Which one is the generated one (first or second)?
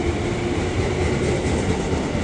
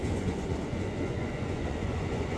second